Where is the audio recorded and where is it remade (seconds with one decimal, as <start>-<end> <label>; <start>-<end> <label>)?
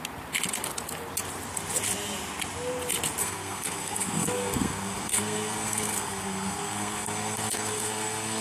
0.0-3.2 recorded; 3.2-8.4 remade